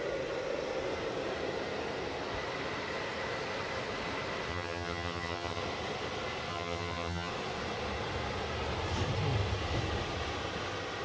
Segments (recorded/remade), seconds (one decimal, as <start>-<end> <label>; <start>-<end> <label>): 0.0-4.5 recorded; 4.5-5.6 remade; 5.6-6.5 recorded; 6.5-7.3 remade; 7.3-11.0 recorded